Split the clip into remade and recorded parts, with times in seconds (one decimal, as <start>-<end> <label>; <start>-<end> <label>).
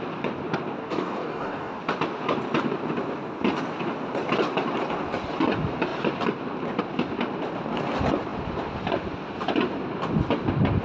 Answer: 0.0-0.8 recorded; 0.8-1.8 remade; 1.8-10.8 recorded